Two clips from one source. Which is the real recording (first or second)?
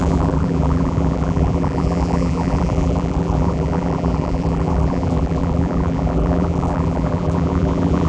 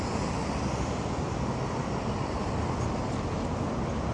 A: second